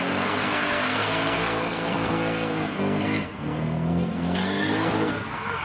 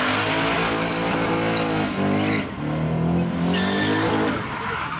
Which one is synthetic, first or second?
first